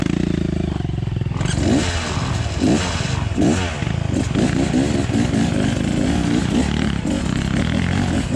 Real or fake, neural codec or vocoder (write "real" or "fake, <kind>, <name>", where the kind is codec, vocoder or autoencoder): real